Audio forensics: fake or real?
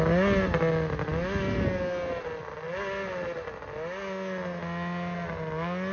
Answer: real